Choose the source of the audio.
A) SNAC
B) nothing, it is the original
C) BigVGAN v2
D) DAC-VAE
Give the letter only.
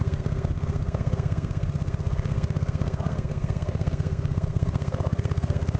A